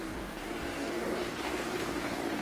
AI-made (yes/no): yes